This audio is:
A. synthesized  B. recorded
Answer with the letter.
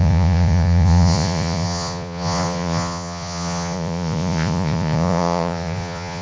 A